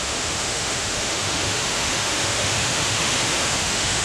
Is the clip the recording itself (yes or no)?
no